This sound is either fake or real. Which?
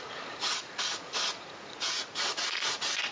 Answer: fake